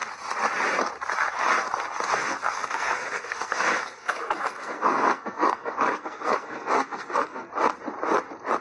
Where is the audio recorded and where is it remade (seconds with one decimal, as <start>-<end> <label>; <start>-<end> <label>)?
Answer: 0.0-2.1 recorded; 2.1-7.5 remade; 7.5-8.6 recorded